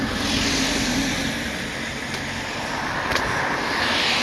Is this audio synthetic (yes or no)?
no